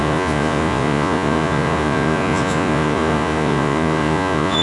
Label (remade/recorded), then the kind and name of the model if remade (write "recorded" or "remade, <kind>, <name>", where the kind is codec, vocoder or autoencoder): remade, vocoder, Vocos